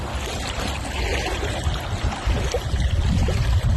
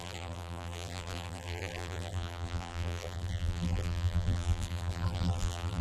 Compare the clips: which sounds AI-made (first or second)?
second